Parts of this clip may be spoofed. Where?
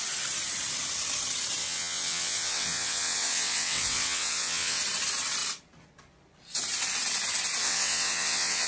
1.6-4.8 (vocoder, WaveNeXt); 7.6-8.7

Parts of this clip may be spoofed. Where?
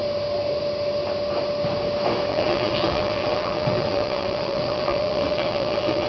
2.3-6.1 (vocoder, WaveNeXt)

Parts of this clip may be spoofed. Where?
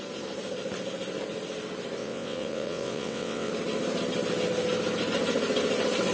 2.0-3.5 (vocoder, WaveNeXt)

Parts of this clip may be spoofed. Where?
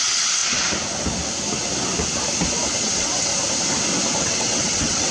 0.0-0.4 (vocoder, WaveNeXt); 2.8-3.3; 4.2-5.1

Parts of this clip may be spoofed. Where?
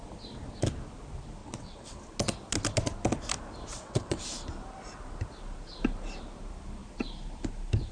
1.4-2.0 (vocoder, WaveNeXt); 3.7-4.2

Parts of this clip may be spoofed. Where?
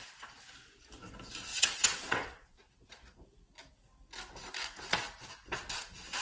1.5-2.7 (vocoder, WaveNeXt)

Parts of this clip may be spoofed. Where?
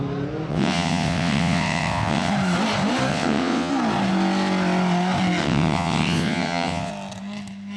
0.5-2.3 (vocoder, WaveNeXt); 3.1-3.7; 5.4-6.9